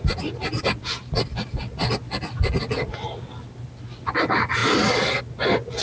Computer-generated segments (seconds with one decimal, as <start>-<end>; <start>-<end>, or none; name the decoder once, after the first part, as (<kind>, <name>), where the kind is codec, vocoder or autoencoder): none